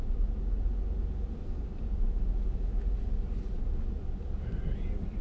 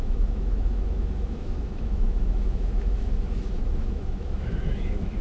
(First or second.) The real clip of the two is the first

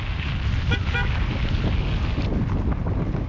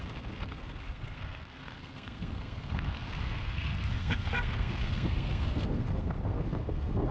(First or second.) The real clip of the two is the first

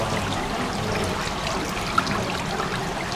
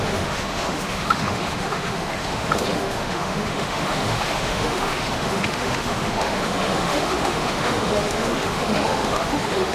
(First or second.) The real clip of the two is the first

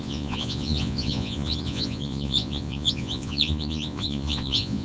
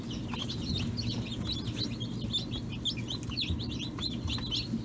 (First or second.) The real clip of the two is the second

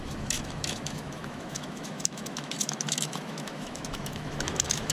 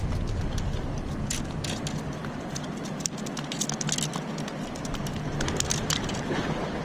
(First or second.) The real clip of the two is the second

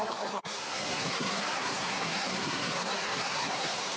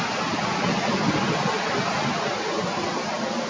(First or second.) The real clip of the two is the second